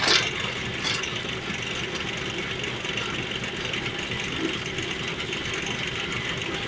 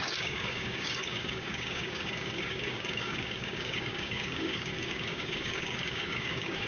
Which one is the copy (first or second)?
second